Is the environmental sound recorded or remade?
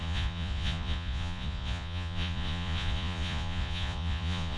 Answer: remade